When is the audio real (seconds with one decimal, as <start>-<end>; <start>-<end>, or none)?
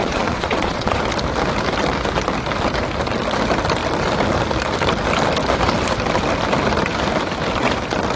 1.0-8.2